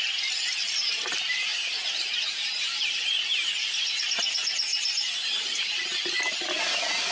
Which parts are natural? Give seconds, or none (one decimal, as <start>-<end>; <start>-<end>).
0.0-1.5; 3.5-4.7; 5.8-7.1